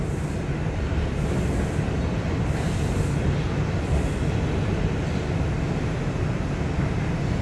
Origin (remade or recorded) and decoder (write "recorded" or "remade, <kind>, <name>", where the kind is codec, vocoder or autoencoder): recorded